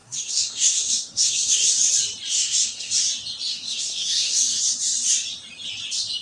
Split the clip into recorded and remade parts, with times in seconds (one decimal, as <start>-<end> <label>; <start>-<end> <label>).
0.0-1.7 remade; 1.7-2.3 recorded; 2.3-2.9 remade; 2.9-3.5 recorded; 3.5-4.6 remade; 4.6-6.2 recorded